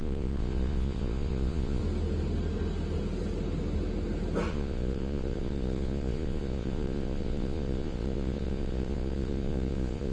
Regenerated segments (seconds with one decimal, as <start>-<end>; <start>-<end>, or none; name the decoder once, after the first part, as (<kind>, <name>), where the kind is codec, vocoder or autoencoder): 0.0-1.8 (vocoder, Vocos); 4.5-10.1

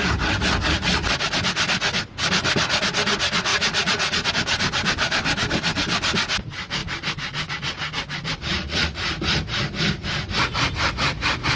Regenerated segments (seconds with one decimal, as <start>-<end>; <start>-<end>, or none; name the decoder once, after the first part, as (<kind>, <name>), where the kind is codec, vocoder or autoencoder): 3.5-4.3 (vocoder, Vocos); 8.5-9.2

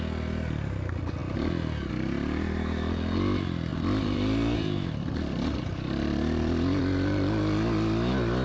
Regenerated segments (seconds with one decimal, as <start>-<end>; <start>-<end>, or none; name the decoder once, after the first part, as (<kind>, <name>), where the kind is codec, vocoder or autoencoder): none

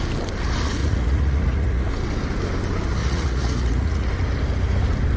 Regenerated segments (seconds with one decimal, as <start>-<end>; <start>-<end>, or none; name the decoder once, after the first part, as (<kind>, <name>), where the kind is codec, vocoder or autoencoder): 0.8-1.9 (vocoder, Vocos); 3.0-4.1

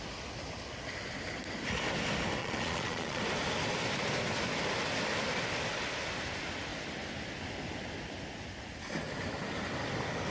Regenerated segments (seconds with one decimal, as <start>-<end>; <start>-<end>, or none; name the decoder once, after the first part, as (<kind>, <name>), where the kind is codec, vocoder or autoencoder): 2.4-3.2 (vocoder, Vocos)

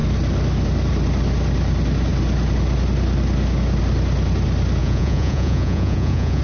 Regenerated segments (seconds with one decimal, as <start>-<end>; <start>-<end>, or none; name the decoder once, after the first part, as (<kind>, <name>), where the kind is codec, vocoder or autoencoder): 4.8-6.4 (vocoder, Vocos)

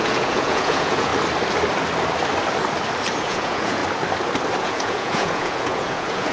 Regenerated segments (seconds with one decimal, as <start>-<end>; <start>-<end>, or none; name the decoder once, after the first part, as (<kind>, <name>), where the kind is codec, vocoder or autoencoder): 0.0-1.1 (vocoder, Vocos); 3.2-3.8; 4.6-6.3

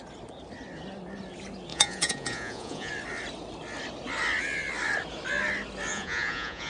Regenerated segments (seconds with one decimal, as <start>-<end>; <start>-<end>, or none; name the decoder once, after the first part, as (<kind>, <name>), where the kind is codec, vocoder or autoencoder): 1.7-2.9 (vocoder, Vocos); 5.9-6.7